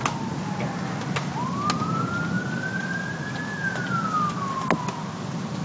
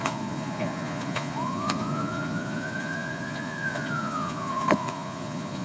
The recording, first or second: first